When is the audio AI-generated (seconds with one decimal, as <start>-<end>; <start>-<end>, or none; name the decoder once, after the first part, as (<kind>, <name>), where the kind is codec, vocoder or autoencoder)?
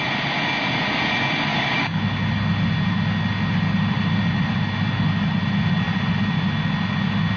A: 1.5-2.0 (codec, DAC)